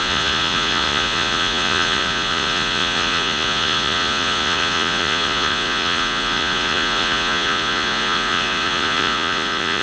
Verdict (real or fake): fake